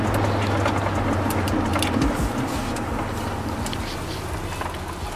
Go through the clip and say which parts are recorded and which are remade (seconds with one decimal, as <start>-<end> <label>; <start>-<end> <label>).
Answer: 0.0-5.2 recorded